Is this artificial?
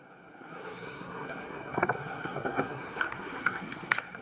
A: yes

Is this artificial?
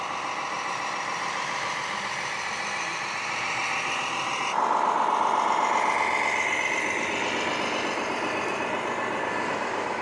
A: no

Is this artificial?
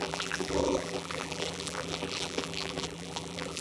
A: yes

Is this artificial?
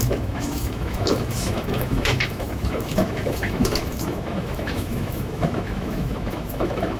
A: yes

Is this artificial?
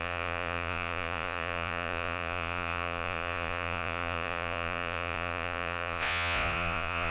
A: yes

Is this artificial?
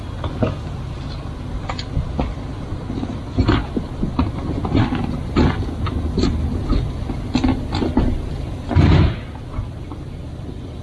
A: no